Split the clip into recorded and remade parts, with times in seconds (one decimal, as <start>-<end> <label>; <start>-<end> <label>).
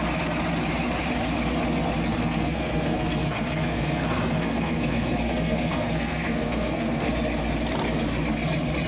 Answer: 0.0-2.2 recorded; 2.2-7.1 remade; 7.1-8.9 recorded